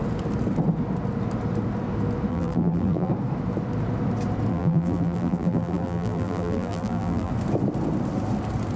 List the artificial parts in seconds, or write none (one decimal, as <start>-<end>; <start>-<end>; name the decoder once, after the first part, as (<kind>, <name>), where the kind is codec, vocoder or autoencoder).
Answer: 2.3-3.1 (vocoder, BigVGAN v2); 4.5-7.3